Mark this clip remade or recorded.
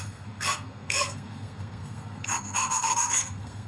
remade